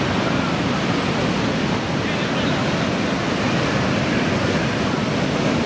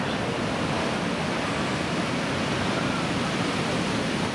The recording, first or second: first